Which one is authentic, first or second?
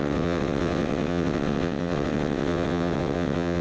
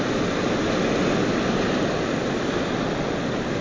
second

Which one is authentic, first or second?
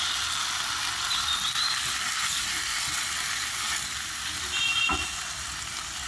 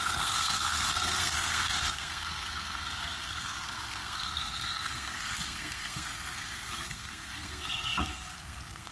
first